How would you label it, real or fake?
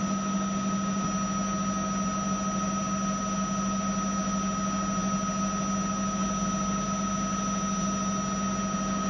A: real